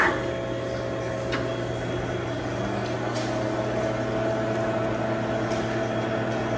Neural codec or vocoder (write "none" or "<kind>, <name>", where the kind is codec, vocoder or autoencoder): none